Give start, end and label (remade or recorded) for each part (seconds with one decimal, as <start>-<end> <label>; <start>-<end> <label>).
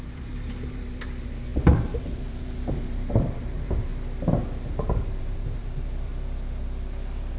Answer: 0.0-1.5 remade; 1.5-2.0 recorded; 2.0-3.9 remade; 3.9-5.2 recorded; 5.2-6.1 remade; 6.1-7.4 recorded